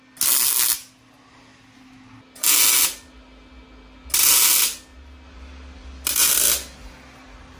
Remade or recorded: recorded